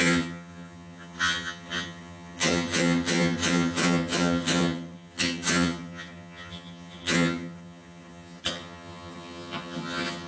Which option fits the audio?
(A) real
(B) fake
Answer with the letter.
B